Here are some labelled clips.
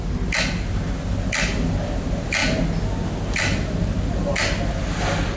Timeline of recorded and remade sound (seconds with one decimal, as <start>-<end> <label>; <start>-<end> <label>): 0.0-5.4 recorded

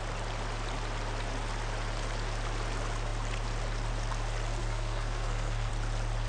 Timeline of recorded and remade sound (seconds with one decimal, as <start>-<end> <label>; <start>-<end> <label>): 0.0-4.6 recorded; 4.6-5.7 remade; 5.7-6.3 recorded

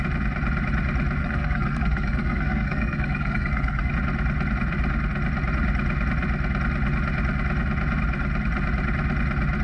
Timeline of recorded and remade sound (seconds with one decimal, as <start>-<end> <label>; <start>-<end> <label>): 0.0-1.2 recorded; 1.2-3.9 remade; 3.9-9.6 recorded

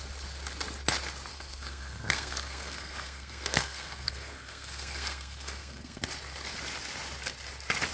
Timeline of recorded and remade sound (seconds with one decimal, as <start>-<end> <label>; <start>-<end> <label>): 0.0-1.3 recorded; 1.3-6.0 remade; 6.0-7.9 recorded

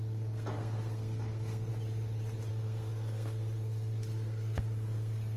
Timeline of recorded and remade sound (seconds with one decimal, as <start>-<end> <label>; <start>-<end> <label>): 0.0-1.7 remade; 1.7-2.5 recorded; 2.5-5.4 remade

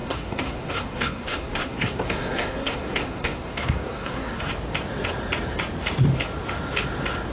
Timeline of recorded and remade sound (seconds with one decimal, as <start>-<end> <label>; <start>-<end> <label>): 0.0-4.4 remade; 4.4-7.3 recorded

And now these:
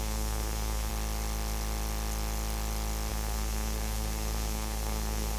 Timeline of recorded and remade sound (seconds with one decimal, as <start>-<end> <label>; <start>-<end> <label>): 0.0-0.9 remade; 0.9-3.1 recorded; 3.1-5.4 remade

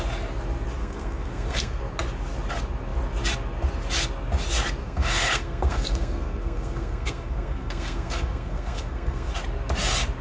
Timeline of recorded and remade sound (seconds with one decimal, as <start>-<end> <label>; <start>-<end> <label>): 0.0-0.8 recorded; 0.8-1.8 remade; 1.8-4.8 recorded; 4.8-9.3 remade; 9.3-10.2 recorded